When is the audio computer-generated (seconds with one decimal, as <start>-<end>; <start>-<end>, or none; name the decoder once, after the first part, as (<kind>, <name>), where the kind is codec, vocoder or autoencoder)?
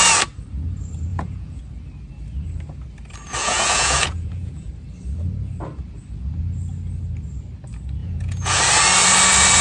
1.1-1.6 (vocoder, Vocos); 3.4-4.7; 8.0-8.6